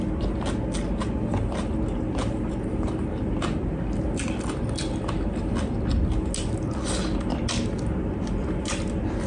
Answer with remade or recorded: recorded